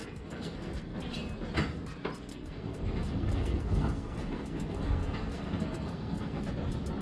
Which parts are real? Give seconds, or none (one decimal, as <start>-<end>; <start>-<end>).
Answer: 1.0-2.3; 6.4-7.0